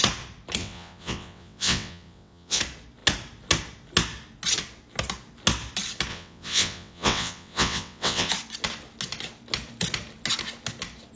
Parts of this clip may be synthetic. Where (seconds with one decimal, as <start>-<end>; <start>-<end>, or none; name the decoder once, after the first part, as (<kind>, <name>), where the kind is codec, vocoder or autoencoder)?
0.6-2.6 (vocoder, WaveNeXt); 6.1-8.3